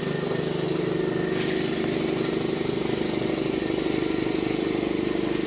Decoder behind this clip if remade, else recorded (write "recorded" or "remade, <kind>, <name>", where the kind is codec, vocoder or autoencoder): recorded